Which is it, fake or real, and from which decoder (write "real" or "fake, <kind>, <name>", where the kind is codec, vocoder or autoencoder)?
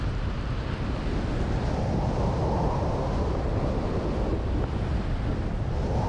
real